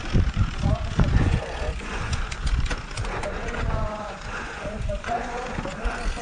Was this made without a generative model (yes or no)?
no